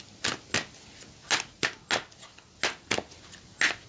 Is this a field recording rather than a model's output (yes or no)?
yes